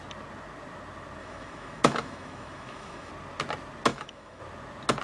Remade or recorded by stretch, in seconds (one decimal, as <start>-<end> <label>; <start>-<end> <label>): 0.0-1.2 recorded; 1.2-3.1 remade; 3.1-3.9 recorded; 3.9-4.4 remade; 4.4-5.0 recorded